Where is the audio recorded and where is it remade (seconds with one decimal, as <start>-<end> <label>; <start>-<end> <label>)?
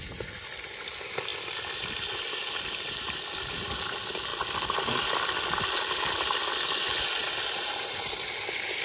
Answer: 0.0-1.3 recorded; 1.3-2.4 remade; 2.4-8.8 recorded